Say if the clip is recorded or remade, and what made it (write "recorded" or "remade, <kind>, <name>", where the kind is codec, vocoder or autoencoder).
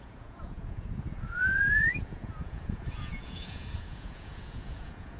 remade, vocoder, Vocos